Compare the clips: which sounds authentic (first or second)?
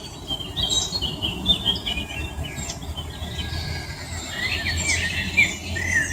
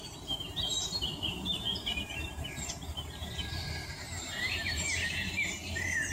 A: first